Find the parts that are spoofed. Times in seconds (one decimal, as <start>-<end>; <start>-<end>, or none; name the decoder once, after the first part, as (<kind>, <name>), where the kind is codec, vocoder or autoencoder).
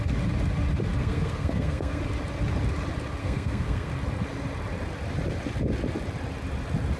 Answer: 1.0-2.0 (codec, SNAC); 3.2-3.9